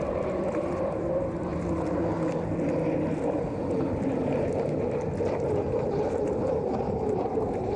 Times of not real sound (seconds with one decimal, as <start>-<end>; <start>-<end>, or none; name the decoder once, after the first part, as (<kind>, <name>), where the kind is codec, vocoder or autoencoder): 0.0-1.5 (vocoder, BigVGAN v2); 4.3-7.8